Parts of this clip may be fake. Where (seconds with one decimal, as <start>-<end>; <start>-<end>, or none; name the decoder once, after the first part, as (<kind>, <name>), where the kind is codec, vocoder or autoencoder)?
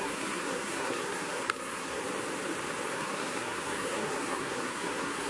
0.0-2.0 (codec, SNAC); 2.9-5.3